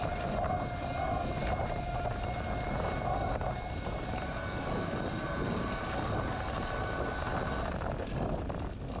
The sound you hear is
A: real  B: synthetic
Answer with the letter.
A